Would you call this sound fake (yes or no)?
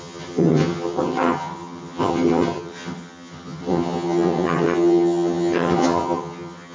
yes